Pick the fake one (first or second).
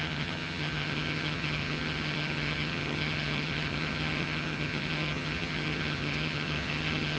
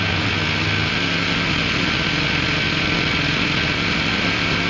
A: first